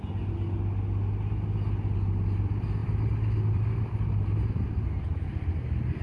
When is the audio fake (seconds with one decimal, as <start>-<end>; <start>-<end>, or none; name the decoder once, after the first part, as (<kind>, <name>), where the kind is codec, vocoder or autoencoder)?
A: 2.8-4.1 (vocoder, BigVGAN v2)